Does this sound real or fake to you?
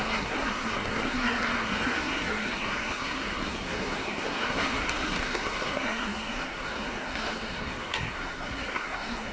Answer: fake